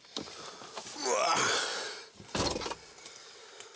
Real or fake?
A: real